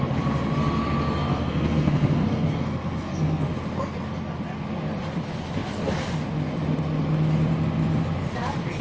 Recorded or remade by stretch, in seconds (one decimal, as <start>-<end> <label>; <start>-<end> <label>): 0.0-1.3 recorded; 1.3-3.5 remade; 3.5-8.8 recorded